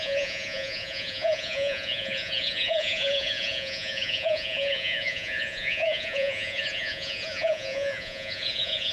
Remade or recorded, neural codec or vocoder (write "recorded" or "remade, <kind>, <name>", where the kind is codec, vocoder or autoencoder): remade, vocoder, Vocos